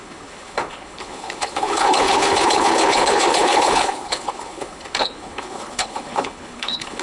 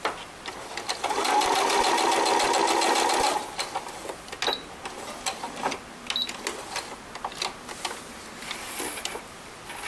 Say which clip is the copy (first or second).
first